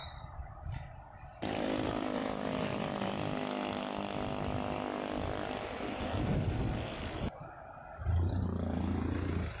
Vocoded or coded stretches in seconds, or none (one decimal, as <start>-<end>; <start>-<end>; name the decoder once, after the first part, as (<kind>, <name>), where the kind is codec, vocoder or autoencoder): 0.0-3.1 (vocoder, BigVGAN v2)